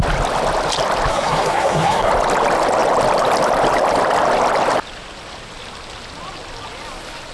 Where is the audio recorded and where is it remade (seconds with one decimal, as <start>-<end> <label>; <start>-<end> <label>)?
0.0-1.1 recorded; 1.1-2.1 remade; 2.1-7.3 recorded

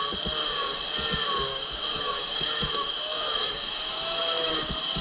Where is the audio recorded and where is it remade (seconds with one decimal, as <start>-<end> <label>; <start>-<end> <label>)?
0.0-1.5 recorded; 1.5-4.5 remade; 4.5-5.0 recorded

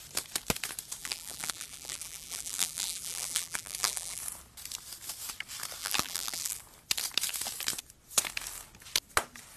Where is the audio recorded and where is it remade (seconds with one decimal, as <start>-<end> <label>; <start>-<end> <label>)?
0.0-1.0 recorded; 1.0-4.2 remade; 4.2-5.8 recorded; 5.8-6.6 remade; 6.6-9.6 recorded

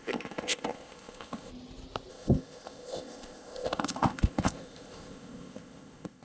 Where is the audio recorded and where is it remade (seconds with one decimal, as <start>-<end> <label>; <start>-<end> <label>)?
0.0-1.5 remade; 1.5-2.1 recorded; 2.1-6.2 remade

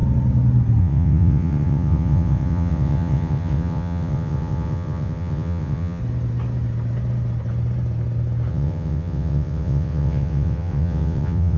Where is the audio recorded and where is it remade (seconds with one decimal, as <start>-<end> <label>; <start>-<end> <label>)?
0.0-0.8 recorded; 0.8-6.0 remade; 6.0-8.5 recorded; 8.5-11.6 remade

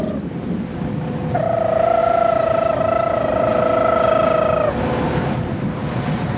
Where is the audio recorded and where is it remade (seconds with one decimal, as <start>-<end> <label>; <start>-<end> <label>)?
0.0-6.4 recorded

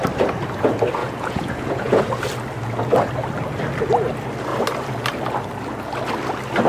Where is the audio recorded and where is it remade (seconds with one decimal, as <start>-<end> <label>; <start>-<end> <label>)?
0.0-1.0 recorded; 1.0-2.0 remade; 2.0-6.7 recorded

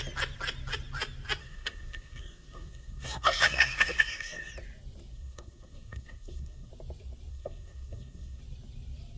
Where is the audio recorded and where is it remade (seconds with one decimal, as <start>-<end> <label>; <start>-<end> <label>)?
0.0-1.4 recorded; 1.4-4.5 remade; 4.5-5.1 recorded; 5.1-6.7 remade; 6.7-7.3 recorded; 7.3-8.4 remade; 8.4-9.2 recorded